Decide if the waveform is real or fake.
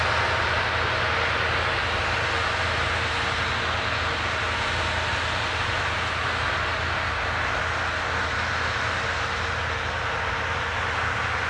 real